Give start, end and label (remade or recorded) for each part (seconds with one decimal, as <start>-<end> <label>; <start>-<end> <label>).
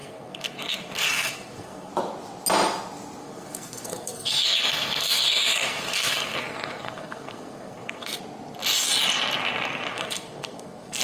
0.0-1.9 remade; 1.9-3.2 recorded; 3.2-8.2 remade; 8.2-9.9 recorded; 9.9-11.0 remade